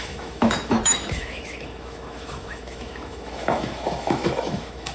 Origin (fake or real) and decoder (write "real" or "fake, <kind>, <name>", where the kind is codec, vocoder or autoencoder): fake, autoencoder, DAC-VAE